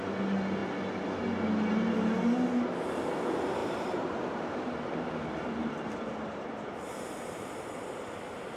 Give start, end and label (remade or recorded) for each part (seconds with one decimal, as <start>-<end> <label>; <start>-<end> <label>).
0.0-3.6 recorded; 3.6-8.0 remade; 8.0-8.6 recorded